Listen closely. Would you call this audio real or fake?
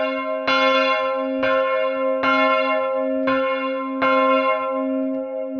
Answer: real